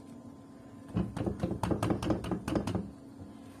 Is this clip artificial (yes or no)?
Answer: no